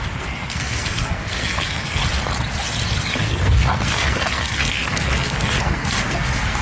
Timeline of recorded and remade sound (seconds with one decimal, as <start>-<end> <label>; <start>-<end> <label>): 0.0-2.0 remade; 2.0-3.2 recorded; 3.2-6.6 remade